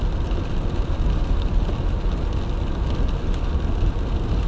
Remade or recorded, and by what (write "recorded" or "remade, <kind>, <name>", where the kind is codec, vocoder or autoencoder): recorded